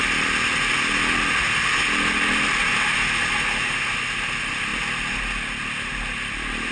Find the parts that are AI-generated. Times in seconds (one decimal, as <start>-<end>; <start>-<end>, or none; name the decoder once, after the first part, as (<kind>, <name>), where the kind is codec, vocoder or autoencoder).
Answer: none